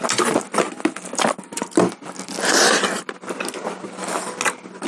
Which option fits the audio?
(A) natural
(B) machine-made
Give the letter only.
A